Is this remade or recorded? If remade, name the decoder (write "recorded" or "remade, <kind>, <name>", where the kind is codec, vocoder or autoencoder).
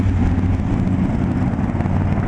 recorded